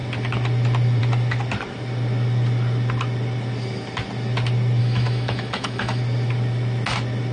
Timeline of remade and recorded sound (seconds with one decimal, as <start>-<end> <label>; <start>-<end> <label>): 0.0-4.8 recorded; 4.8-6.0 remade; 6.0-7.3 recorded